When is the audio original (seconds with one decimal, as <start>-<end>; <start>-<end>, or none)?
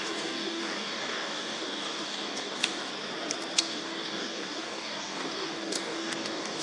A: 2.9-3.6